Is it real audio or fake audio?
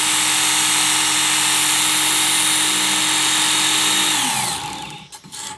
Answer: real